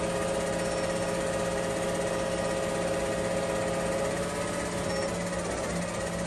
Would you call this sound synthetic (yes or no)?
no